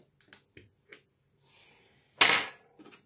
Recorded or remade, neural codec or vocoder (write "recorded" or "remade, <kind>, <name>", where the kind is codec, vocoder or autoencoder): recorded